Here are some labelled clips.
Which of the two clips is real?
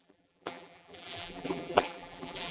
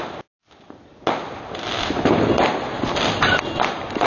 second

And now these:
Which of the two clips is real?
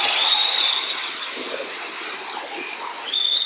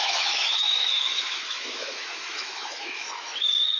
first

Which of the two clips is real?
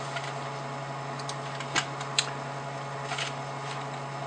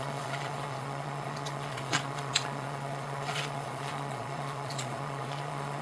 first